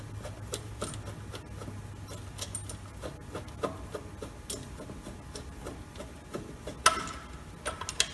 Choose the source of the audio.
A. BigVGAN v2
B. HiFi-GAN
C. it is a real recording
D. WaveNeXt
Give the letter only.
C